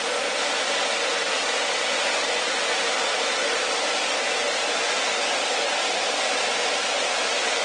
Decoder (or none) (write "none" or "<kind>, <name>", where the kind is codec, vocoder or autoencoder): none